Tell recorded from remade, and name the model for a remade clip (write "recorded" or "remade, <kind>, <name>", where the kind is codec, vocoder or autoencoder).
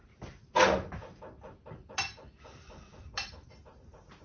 recorded